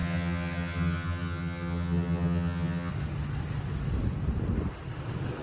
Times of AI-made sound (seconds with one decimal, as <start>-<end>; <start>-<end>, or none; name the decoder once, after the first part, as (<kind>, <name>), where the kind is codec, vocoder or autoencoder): 0.0-2.9 (vocoder, HiFi-GAN)